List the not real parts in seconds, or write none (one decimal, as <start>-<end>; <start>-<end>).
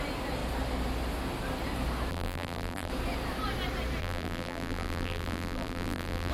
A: 2.1-2.9; 4.0-6.3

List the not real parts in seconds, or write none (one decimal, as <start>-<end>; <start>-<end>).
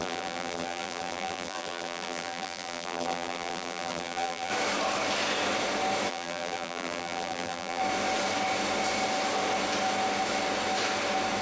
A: 0.0-4.5; 6.1-7.8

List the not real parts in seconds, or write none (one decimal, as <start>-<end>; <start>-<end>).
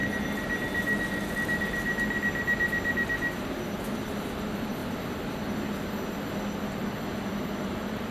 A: 4.2-4.8; 7.6-8.1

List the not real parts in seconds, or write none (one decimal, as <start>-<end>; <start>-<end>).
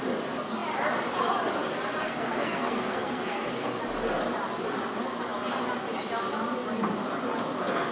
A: 2.0-3.8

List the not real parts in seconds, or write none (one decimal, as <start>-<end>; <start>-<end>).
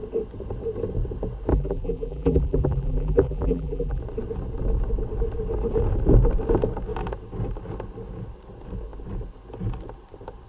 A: 1.5-4.0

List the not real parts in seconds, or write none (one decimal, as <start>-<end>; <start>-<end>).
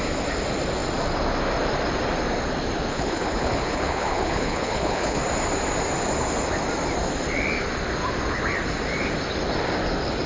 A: 2.9-5.2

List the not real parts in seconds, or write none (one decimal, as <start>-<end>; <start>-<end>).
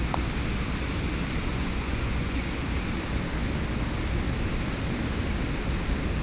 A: 1.5-2.5